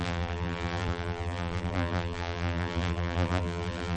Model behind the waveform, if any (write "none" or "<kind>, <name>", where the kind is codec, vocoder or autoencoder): vocoder, BigVGAN v2